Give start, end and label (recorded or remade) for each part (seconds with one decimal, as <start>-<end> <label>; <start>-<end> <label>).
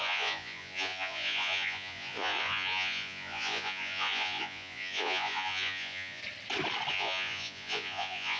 0.0-6.2 remade; 6.2-6.9 recorded; 6.9-8.4 remade